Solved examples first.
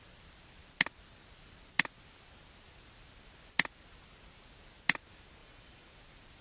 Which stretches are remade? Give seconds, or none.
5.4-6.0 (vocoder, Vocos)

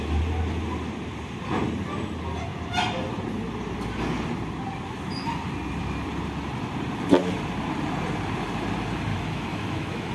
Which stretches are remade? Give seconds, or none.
9.1-10.1 (autoencoder, DAC-VAE)

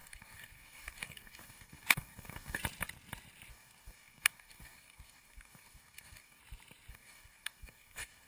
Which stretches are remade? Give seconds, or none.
0.0-2.6 (codec, DAC); 3.5-6.4; 6.9-8.3

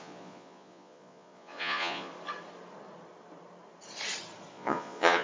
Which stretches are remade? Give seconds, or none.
0.0-2.1 (vocoder, Vocos); 4.5-5.2

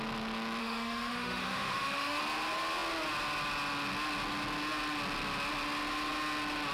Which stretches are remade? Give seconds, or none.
0.6-2.2 (autoencoder, DAC-VAE)

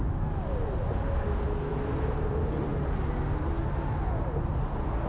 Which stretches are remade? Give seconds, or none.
none